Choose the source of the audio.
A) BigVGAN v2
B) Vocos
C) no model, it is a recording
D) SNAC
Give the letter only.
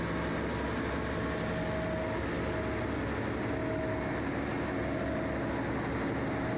C